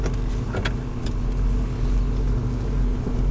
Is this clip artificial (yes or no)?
no